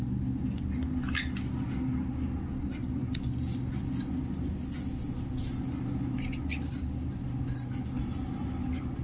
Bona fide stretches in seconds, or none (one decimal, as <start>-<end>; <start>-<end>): 0.0-9.0